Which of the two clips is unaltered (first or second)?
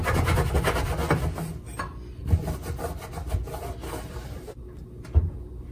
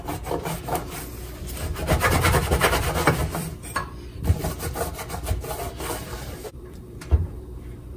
first